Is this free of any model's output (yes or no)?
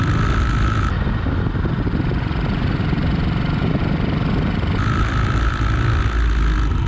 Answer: yes